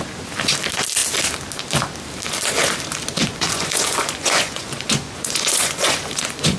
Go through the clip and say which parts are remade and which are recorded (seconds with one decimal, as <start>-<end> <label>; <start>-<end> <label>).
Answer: 0.0-3.2 recorded; 3.2-6.6 remade